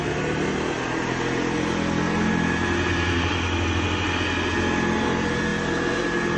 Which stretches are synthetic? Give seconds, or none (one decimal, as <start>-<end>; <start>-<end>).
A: none